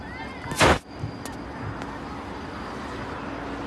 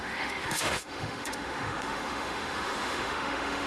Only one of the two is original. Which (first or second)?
first